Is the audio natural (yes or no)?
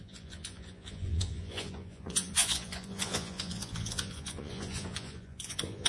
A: no